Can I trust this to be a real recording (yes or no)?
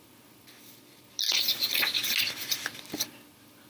yes